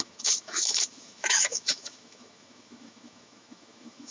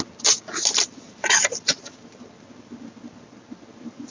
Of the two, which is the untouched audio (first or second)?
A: second